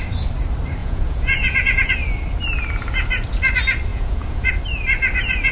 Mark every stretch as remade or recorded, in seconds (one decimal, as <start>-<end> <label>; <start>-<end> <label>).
0.0-0.8 recorded; 0.8-1.9 remade; 1.9-3.9 recorded; 3.9-4.5 remade; 4.5-5.5 recorded